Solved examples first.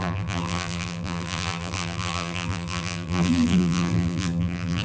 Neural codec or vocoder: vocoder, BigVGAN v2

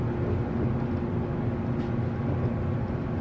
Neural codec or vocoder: none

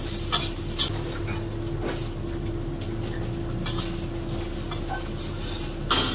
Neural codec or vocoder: none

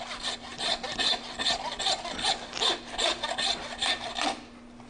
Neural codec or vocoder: none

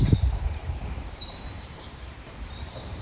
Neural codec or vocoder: vocoder, BigVGAN v2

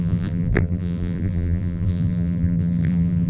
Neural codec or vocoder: vocoder, BigVGAN v2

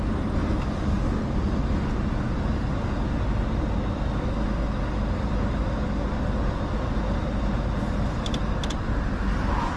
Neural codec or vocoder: none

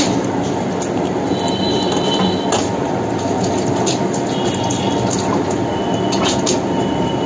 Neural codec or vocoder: none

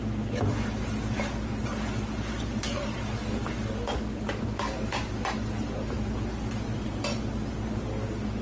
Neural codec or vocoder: none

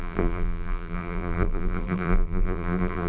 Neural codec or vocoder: vocoder, BigVGAN v2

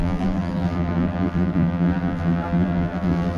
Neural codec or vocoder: vocoder, BigVGAN v2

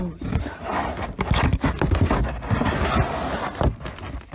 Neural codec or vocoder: none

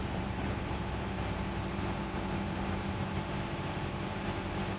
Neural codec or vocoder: vocoder, BigVGAN v2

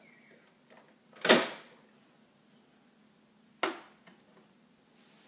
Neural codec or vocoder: none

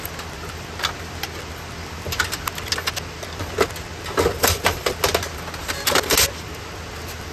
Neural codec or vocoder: none